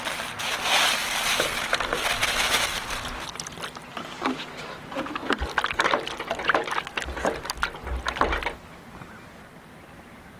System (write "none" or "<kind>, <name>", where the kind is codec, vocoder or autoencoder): none